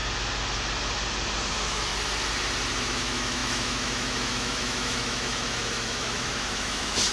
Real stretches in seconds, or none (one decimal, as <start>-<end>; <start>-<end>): 0.0-1.5; 1.9-2.8